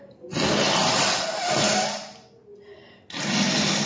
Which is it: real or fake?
real